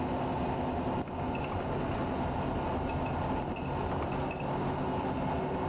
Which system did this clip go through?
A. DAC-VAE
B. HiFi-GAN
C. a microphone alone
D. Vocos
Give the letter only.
C